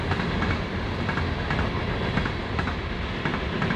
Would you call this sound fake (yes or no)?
no